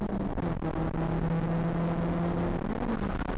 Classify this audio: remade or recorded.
recorded